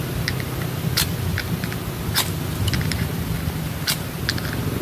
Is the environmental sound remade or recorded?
recorded